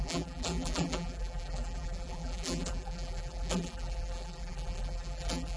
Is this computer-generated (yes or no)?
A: yes